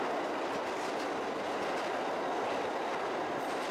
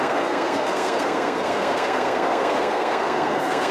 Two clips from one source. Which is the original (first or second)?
first